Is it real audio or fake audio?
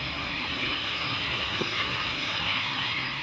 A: fake